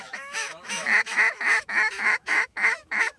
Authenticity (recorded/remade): remade